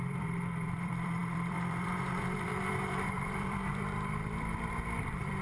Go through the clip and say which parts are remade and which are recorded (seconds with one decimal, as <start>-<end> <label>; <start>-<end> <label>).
0.0-5.4 remade